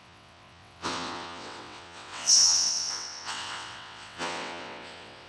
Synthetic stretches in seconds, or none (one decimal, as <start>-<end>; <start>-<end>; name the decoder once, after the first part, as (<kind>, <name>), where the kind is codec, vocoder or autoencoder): 0.0-5.3 (vocoder, WaveNeXt)